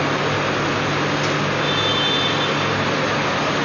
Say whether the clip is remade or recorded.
recorded